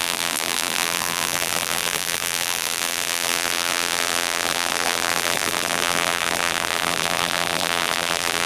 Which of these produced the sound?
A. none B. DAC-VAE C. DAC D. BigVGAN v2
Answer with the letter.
D